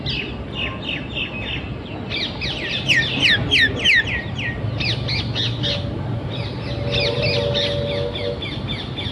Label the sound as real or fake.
real